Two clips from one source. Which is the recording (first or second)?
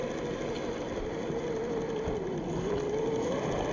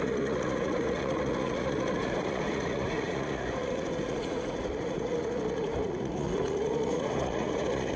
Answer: first